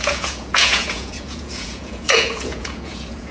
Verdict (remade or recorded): remade